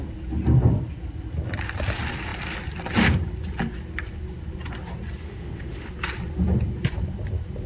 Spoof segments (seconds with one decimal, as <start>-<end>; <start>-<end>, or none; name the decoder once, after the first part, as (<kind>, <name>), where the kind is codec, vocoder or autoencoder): 5.2-5.9 (autoencoder, DAC-VAE)